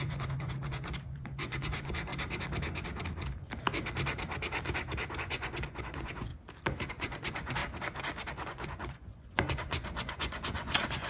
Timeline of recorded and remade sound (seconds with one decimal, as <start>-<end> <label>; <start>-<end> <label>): 0.0-2.1 remade; 2.1-5.2 recorded; 5.2-6.3 remade; 6.3-6.9 recorded; 6.9-7.6 remade; 7.6-8.3 recorded; 8.3-11.1 remade